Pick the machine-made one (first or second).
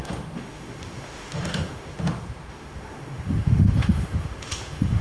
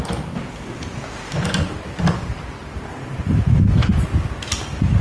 first